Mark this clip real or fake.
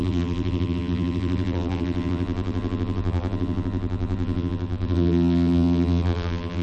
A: fake